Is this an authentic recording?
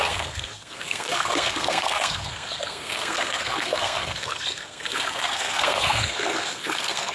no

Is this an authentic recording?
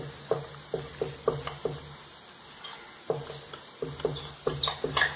yes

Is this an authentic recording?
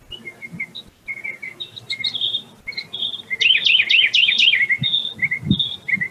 yes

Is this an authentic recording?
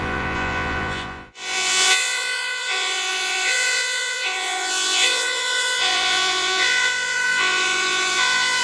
no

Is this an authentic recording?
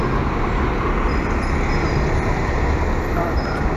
yes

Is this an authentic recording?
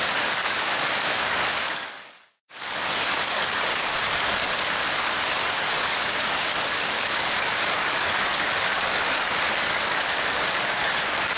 no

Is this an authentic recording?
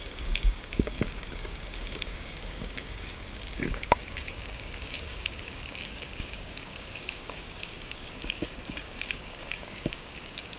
no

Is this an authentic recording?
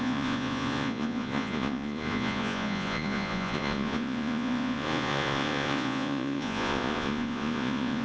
no